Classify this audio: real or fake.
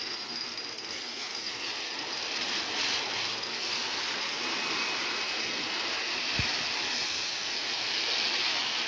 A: real